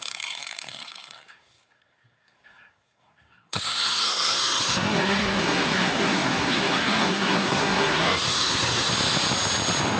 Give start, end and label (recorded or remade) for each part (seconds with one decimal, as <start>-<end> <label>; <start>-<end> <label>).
0.0-8.9 remade; 8.9-10.0 recorded